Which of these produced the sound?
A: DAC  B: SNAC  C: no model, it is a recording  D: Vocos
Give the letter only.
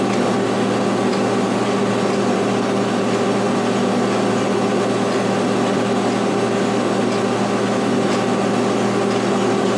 C